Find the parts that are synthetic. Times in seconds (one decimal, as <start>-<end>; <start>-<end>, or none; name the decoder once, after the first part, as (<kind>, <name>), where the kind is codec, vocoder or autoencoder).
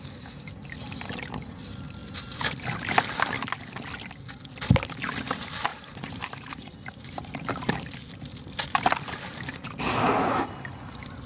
5.7-7.8 (vocoder, BigVGAN v2)